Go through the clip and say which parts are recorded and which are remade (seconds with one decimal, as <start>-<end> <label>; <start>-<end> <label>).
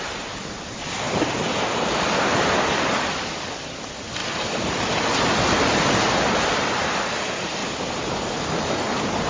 0.0-9.3 recorded